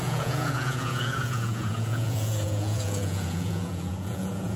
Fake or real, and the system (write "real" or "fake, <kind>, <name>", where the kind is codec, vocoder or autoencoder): fake, vocoder, Vocos